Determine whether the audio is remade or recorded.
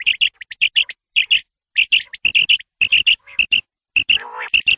recorded